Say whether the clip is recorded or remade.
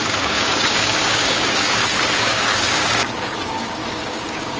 remade